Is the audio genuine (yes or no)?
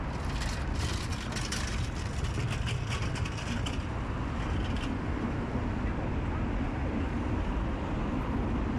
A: yes